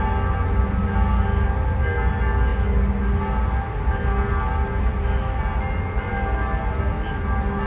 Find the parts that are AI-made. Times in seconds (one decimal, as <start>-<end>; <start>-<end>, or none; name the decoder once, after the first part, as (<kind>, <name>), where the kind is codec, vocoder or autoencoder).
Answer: none